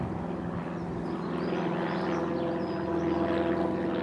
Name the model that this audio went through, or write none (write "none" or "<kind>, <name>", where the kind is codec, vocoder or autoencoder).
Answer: none